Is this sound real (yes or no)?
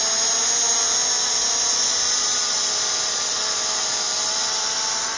yes